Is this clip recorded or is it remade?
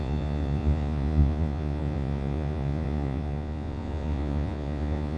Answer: remade